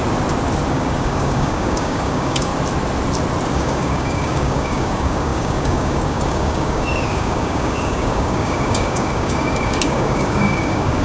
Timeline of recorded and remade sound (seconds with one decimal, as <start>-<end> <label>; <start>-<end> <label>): 0.0-0.7 recorded; 0.7-2.5 remade; 2.5-3.5 recorded; 3.5-11.0 remade